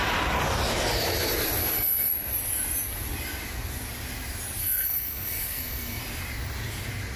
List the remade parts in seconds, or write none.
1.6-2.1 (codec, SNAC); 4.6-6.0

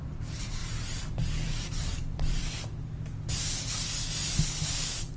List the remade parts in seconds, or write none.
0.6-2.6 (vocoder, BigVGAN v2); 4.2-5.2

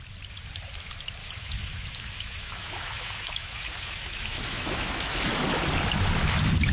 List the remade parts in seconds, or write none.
1.2-5.2 (autoencoder, DAC-VAE)

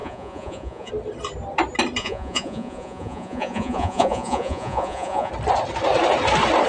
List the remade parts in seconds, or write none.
0.0-0.9 (vocoder, Vocos); 2.0-5.3

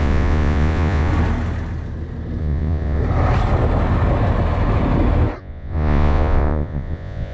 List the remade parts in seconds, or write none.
0.0-1.1 (vocoder, Vocos); 2.4-3.0; 5.4-7.3

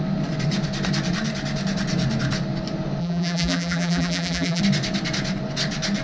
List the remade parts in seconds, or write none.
3.0-4.6 (vocoder, BigVGAN v2)

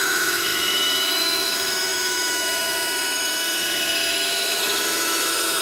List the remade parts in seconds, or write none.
0.0-5.6 (autoencoder, DAC-VAE)

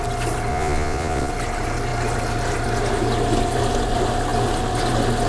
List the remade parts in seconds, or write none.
0.5-1.3 (vocoder, Vocos)